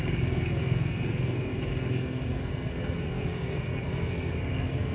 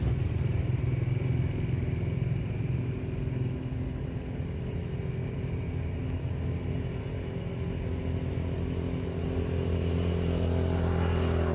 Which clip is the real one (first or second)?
second